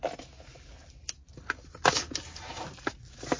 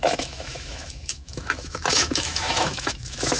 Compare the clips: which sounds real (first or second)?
first